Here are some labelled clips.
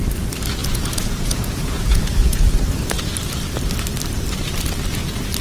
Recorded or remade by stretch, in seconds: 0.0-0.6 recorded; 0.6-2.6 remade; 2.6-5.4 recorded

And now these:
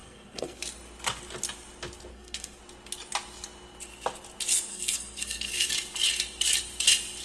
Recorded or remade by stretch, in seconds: 0.0-0.6 remade; 0.6-2.1 recorded; 2.1-2.6 remade; 2.6-4.7 recorded; 4.7-5.7 remade; 5.7-7.2 recorded

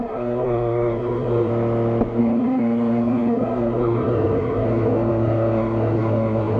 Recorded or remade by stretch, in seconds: 0.0-1.5 remade; 1.5-2.2 recorded; 2.2-6.6 remade

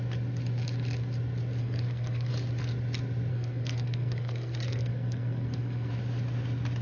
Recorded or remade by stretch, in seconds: 0.0-1.6 recorded; 1.6-2.3 remade; 2.3-3.3 recorded; 3.3-5.9 remade; 5.9-6.8 recorded

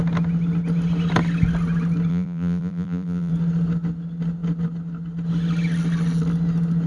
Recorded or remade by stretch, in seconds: 0.0-2.1 recorded; 2.1-3.3 remade; 3.3-6.9 recorded

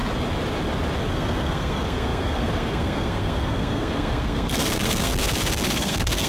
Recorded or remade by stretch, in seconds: 0.0-1.0 recorded; 1.0-6.3 remade

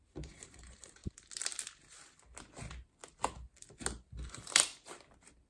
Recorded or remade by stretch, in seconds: 0.0-1.0 remade; 1.0-4.3 recorded; 4.3-4.7 remade; 4.7-5.5 recorded